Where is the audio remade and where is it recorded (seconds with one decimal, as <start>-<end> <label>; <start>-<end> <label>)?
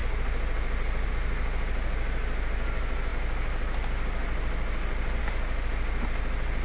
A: 0.0-6.6 recorded